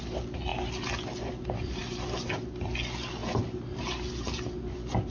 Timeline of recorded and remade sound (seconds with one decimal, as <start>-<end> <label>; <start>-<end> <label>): 0.0-5.1 recorded